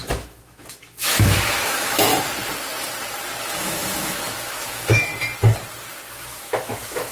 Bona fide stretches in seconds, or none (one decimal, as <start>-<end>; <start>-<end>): 2.1-3.4; 5.1-6.1